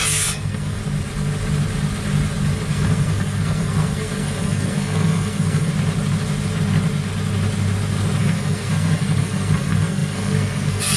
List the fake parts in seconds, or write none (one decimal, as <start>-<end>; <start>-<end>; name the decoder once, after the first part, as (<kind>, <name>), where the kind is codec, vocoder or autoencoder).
0.0-0.8 (codec, SNAC); 2.7-5.7; 8.2-11.0